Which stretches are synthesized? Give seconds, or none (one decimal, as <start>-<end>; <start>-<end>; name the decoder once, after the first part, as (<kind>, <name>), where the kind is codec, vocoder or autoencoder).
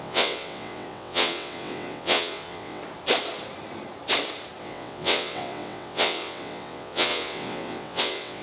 0.0-2.8 (vocoder, WaveNeXt); 4.6-8.4